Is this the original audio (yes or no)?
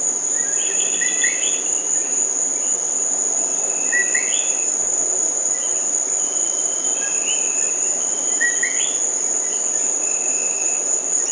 yes